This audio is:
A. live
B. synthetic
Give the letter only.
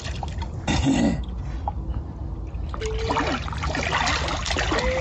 A